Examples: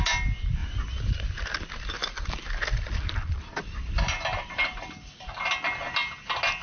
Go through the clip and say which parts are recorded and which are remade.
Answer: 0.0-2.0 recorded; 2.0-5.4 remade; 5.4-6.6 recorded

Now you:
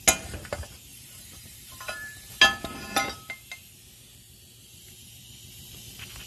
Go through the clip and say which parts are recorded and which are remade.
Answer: 0.0-0.9 recorded; 0.9-2.4 remade; 2.4-4.6 recorded; 4.6-5.1 remade; 5.1-6.3 recorded

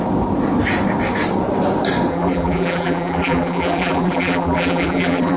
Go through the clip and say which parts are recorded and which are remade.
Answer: 0.0-2.1 recorded; 2.1-5.4 remade

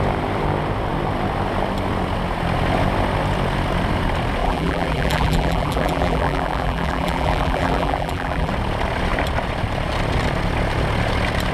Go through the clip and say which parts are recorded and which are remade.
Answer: 0.0-4.4 recorded; 4.4-8.5 remade; 8.5-11.5 recorded

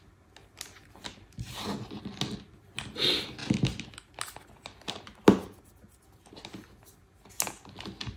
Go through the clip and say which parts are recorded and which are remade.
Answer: 0.0-8.2 recorded

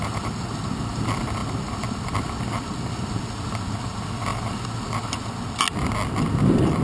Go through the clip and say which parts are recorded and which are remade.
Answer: 0.0-6.8 recorded